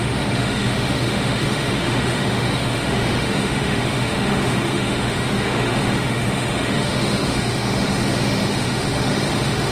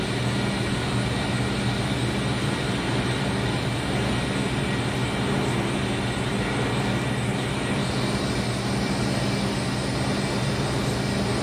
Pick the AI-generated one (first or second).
first